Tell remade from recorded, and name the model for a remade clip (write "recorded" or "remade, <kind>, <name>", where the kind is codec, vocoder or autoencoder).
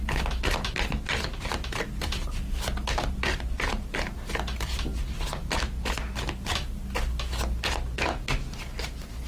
recorded